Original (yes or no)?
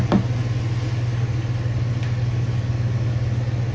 yes